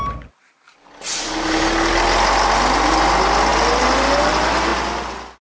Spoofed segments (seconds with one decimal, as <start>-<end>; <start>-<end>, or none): none